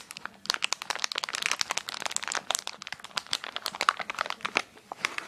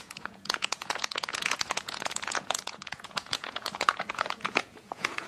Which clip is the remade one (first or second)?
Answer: second